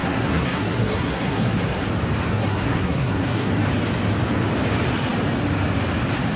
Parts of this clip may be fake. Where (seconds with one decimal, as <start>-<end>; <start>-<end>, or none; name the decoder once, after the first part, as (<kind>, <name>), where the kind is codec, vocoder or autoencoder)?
0.0-1.9 (codec, SNAC); 2.3-3.5